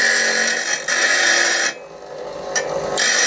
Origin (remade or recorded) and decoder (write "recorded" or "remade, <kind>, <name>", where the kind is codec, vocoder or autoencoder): recorded